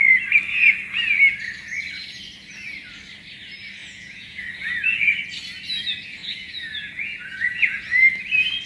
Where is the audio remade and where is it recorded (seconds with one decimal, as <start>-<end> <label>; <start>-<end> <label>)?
0.0-3.8 recorded; 3.8-4.4 remade; 4.4-6.2 recorded; 6.2-7.8 remade; 7.8-8.7 recorded